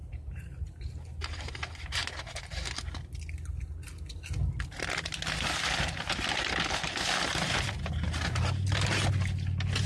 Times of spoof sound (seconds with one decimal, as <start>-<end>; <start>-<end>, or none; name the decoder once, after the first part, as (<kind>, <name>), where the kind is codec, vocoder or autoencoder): 0.0-1.4 (vocoder, BigVGAN v2)

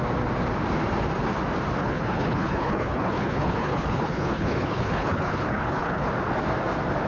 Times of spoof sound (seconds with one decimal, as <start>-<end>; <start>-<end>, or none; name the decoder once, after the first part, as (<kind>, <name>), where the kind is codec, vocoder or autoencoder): 1.8-6.1 (codec, HILCodec)

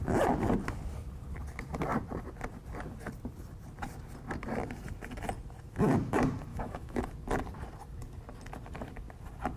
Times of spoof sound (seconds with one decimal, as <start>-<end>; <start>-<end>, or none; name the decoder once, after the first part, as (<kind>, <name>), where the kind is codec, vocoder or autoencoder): 6.5-7.0 (autoencoder, DAC-VAE)

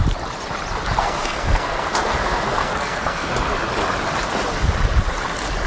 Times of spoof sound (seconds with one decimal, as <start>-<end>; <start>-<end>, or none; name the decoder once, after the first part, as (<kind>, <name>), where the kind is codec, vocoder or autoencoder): 1.0-3.3 (codec, SNAC)

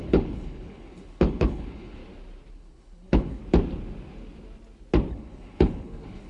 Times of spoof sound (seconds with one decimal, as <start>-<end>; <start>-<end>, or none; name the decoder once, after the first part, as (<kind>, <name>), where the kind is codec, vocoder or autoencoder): 0.0-2.0 (codec, HILCodec); 2.5-3.4; 5.1-6.3

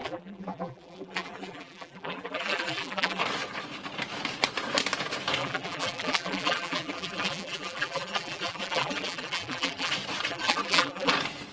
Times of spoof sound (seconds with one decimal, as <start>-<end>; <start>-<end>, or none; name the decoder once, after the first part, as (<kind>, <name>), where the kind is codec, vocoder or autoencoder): 0.0-3.2 (vocoder, BigVGAN v2); 5.4-9.9; 10.3-11.1

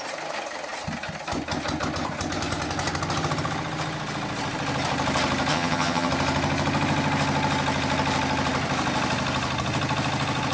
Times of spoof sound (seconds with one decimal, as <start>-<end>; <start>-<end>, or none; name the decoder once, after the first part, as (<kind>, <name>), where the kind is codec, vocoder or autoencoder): 5.5-6.1 (vocoder, HiFi-GAN)